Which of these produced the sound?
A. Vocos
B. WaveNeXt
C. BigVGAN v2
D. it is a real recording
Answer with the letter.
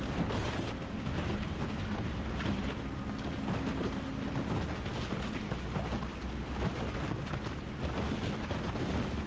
D